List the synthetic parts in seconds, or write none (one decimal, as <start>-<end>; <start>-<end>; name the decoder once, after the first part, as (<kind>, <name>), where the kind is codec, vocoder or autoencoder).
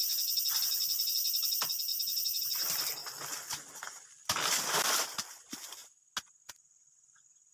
0.0-1.9 (vocoder, BigVGAN v2); 2.4-3.0; 4.5-5.8; 6.5-7.5